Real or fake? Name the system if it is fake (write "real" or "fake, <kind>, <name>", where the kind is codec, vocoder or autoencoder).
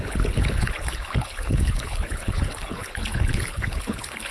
fake, codec, HILCodec